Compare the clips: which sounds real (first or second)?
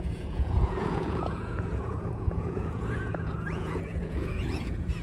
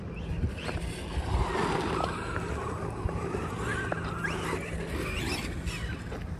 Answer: second